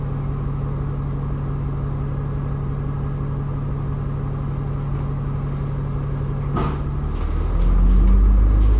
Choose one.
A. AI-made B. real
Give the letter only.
B